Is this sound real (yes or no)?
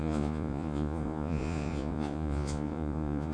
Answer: no